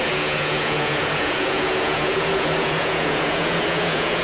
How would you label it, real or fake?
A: fake